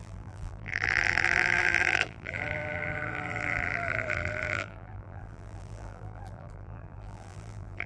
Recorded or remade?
remade